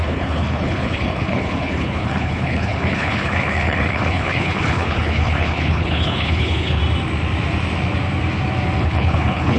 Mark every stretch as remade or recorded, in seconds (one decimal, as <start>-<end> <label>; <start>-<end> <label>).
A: 0.0-6.8 remade; 6.8-8.8 recorded; 8.8-9.6 remade